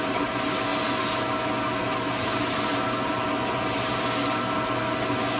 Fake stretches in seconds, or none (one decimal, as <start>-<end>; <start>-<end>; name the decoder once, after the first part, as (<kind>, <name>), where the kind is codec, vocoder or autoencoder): none